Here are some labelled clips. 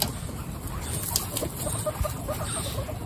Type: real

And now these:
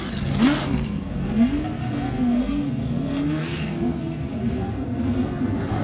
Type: fake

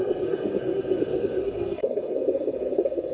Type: fake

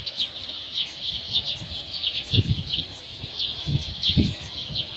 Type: fake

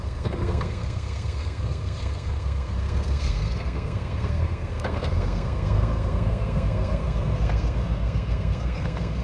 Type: fake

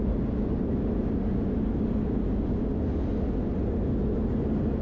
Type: real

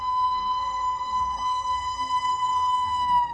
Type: fake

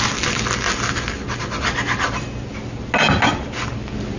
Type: real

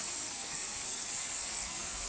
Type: fake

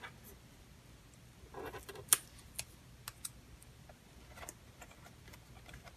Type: real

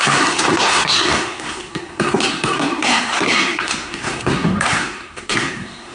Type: fake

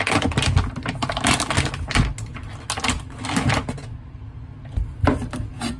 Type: real